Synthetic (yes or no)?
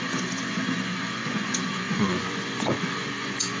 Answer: yes